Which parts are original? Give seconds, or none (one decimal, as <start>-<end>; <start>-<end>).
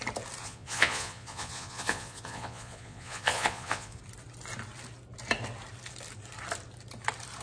0.0-0.4; 4.0-7.4